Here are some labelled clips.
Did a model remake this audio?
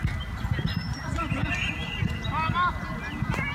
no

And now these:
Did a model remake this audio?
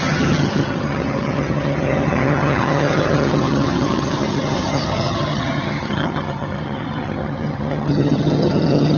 yes